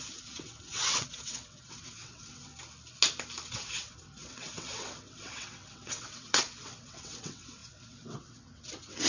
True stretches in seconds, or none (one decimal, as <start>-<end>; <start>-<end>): 2.5-3.5